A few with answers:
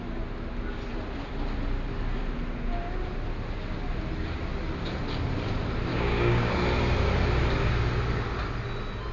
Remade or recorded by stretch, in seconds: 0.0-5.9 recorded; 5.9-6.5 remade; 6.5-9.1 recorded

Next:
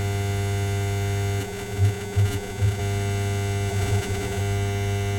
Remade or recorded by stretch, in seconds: 0.0-1.4 recorded; 1.4-2.8 remade; 2.8-3.7 recorded; 3.7-4.4 remade; 4.4-5.2 recorded

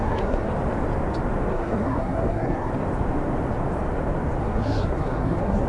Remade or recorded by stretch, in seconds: 0.0-0.5 remade; 0.5-1.5 recorded; 1.5-2.7 remade; 2.7-4.4 recorded; 4.4-5.7 remade

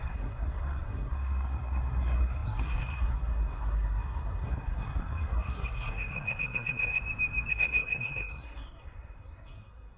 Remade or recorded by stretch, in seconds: 0.0-7.0 remade; 7.0-7.5 recorded; 7.5-10.0 remade

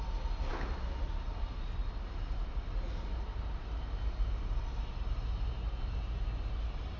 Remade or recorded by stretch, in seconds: 0.0-7.0 recorded

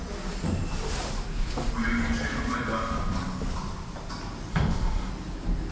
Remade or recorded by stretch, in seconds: 0.0-4.5 recorded; 4.5-5.1 remade; 5.1-5.7 recorded